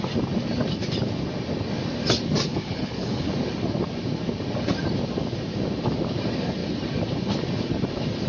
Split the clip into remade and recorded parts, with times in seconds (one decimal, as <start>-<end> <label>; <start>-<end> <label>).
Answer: 0.0-2.5 recorded; 2.5-3.3 remade; 3.3-8.3 recorded